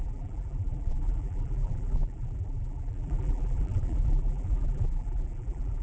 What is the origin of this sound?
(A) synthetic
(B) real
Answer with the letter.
A